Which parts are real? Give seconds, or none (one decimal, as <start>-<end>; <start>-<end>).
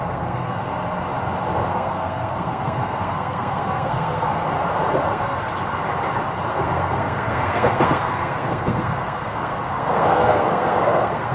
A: 0.6-1.7; 4.4-4.9; 5.5-6.5